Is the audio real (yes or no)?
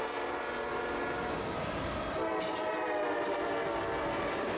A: yes